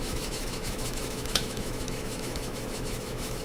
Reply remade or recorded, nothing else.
remade